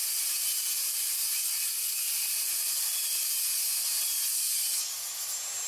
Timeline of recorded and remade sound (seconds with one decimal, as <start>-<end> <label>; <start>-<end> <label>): 0.0-3.3 remade; 3.3-5.7 recorded